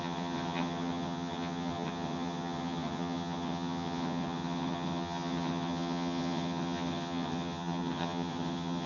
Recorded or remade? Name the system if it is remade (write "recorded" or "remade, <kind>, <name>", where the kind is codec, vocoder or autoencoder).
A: remade, vocoder, HiFi-GAN